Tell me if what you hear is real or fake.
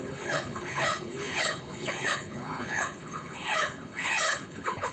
fake